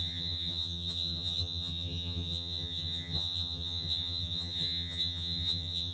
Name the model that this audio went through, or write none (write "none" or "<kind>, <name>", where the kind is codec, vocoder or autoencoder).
vocoder, HiFi-GAN